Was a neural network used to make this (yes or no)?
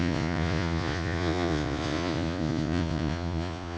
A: yes